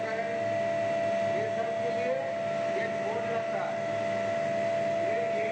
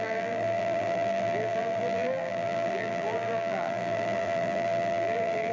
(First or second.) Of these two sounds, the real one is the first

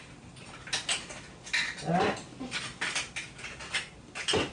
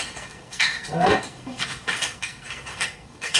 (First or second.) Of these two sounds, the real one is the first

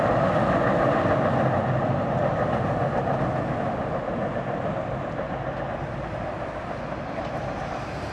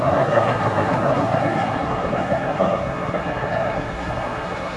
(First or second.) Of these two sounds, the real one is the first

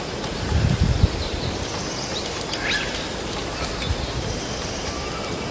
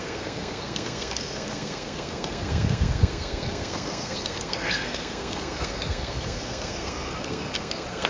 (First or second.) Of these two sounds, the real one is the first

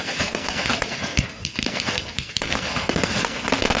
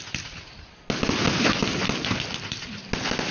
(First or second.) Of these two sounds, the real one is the second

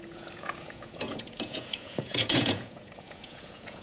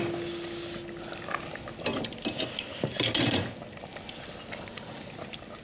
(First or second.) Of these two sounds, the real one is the second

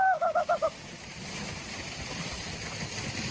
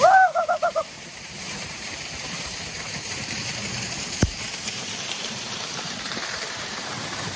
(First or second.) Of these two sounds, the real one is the first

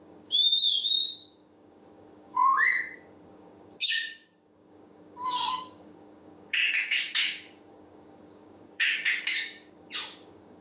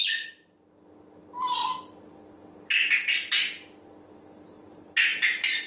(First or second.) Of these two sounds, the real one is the second